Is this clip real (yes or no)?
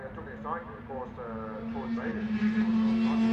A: yes